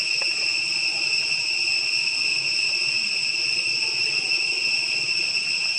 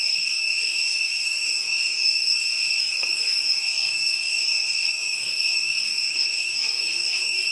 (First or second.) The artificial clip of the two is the second